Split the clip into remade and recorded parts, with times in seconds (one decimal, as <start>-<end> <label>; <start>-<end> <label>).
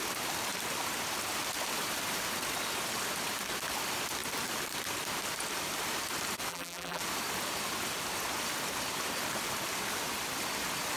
0.0-6.5 recorded; 6.5-7.0 remade; 7.0-11.0 recorded